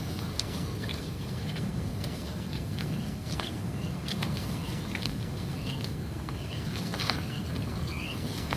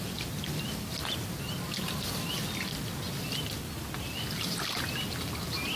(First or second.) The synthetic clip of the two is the first